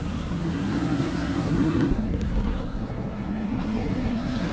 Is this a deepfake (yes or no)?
yes